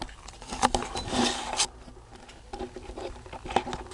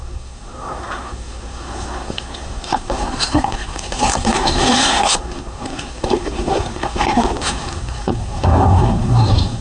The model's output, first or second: second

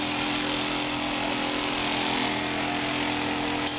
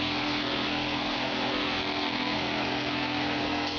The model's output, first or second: second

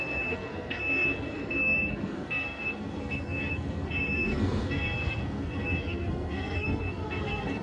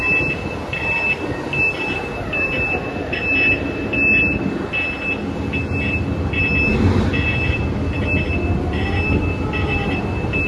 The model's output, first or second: first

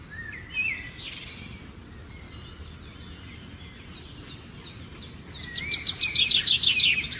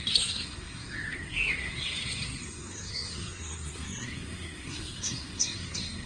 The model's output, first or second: second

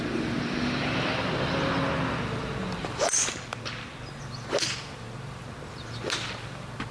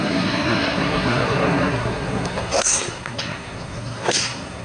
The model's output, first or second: second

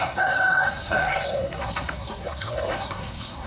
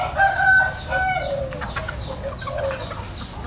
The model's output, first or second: first